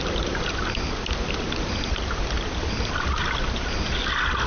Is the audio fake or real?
real